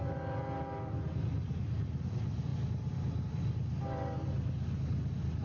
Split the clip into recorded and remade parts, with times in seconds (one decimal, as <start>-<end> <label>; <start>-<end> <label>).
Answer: 0.0-5.4 recorded